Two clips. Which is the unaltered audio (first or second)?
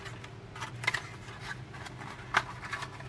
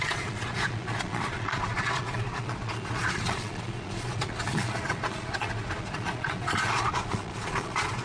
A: first